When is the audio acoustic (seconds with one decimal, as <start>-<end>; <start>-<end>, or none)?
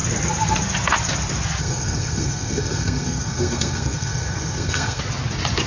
0.0-1.6; 5.0-5.7